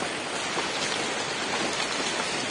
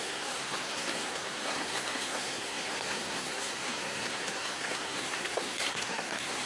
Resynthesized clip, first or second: second